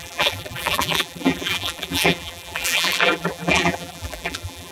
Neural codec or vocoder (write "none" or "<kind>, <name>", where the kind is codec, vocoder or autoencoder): vocoder, BigVGAN v2